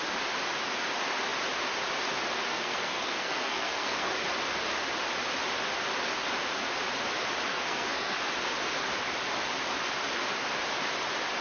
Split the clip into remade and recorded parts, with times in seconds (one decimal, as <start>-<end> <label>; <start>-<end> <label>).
0.0-2.5 recorded; 2.5-4.1 remade; 4.1-7.5 recorded; 7.5-8.2 remade; 8.2-11.4 recorded